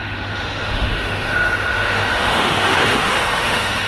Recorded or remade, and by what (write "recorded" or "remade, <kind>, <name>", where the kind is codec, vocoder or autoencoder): remade, autoencoder, DAC-VAE